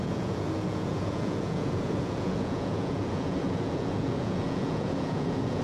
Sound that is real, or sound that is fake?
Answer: fake